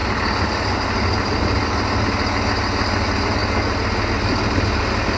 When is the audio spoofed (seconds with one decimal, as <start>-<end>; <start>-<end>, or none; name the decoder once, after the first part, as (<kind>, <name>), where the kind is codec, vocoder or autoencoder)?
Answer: none